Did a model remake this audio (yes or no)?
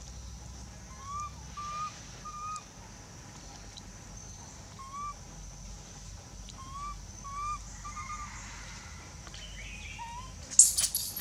no